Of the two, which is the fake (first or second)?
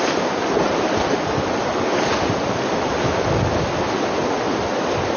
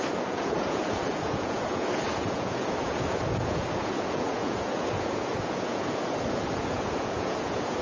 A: second